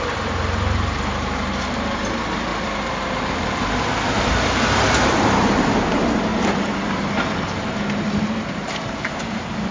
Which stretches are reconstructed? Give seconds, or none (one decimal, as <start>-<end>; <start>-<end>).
0.0-2.5; 3.8-9.7

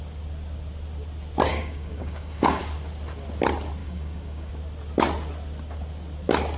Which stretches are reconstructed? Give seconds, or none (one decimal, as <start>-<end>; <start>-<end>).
1.5-2.6; 3.8-4.5

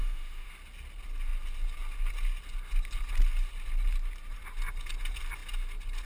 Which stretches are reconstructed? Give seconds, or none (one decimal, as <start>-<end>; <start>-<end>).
0.0-0.5

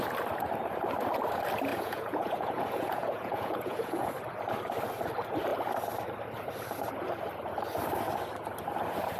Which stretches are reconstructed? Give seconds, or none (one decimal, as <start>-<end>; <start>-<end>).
1.7-4.1

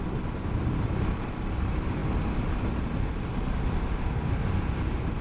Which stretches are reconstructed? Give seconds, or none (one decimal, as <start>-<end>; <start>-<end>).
none

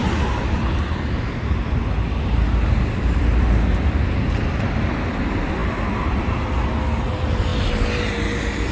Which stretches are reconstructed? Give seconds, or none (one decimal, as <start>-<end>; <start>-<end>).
none

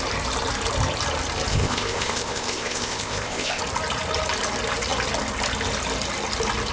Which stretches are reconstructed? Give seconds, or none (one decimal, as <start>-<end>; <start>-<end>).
1.5-3.6